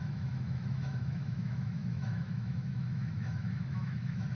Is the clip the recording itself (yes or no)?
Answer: no